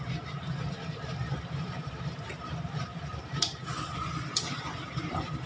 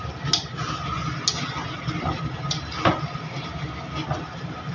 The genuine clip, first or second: second